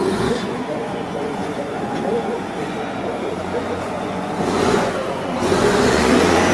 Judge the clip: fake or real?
fake